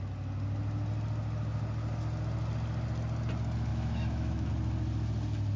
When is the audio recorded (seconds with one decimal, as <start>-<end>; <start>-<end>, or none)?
0.0-3.7; 4.5-5.6